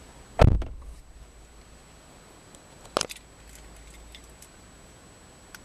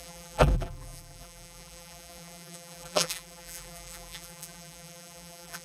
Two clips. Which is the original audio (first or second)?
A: first